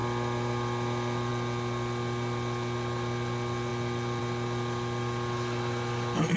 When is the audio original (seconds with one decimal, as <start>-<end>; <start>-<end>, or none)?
0.0-6.4